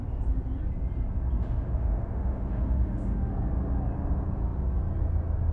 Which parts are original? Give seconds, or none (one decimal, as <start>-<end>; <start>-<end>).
0.0-1.4; 3.3-5.5